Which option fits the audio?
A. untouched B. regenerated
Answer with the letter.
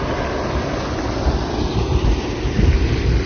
A